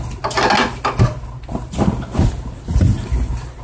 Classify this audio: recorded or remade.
recorded